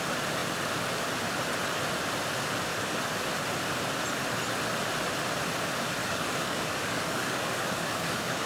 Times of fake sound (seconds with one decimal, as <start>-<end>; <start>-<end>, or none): 2.7-3.3; 6.0-8.5